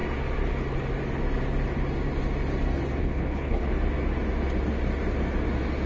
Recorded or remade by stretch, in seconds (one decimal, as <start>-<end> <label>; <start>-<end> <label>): 0.0-3.0 recorded; 3.0-3.7 remade; 3.7-5.9 recorded